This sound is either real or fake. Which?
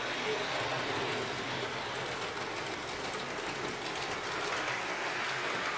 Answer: real